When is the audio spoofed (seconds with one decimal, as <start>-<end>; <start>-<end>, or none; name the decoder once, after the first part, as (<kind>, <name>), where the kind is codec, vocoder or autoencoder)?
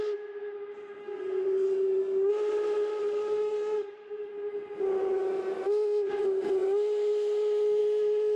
1.0-2.3 (codec, DAC); 3.0-4.3